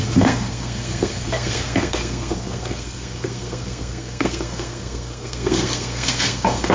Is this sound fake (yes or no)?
yes